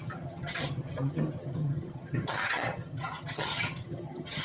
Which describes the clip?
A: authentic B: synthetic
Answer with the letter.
B